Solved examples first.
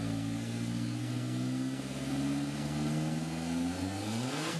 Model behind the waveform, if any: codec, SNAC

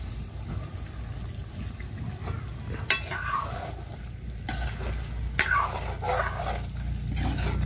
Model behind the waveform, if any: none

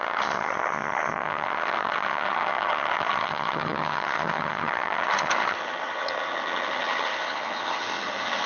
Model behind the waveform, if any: vocoder, HiFi-GAN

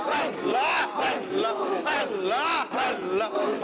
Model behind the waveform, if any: none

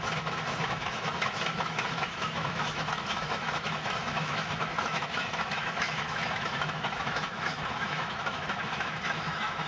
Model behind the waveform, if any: autoencoder, DAC-VAE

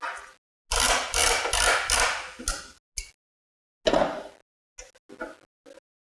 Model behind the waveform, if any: none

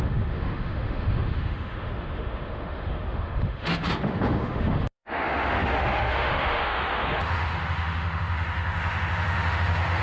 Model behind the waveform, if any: autoencoder, DAC-VAE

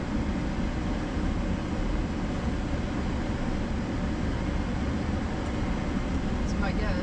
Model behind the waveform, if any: none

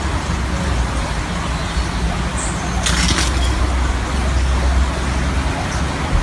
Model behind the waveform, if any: none